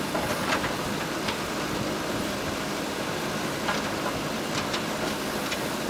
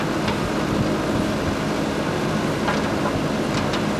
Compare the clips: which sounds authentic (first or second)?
second